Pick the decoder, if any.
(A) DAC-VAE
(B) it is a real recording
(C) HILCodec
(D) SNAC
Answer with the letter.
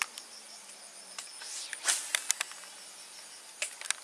B